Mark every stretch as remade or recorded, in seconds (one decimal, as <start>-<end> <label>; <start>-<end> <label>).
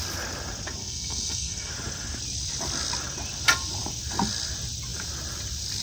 0.0-0.8 recorded; 0.8-1.7 remade; 1.7-5.8 recorded